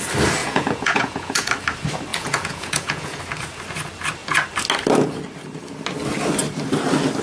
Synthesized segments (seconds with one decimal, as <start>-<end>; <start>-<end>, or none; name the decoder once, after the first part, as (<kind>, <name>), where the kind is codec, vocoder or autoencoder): 0.4-1.5 (vocoder, Vocos); 2.1-3.2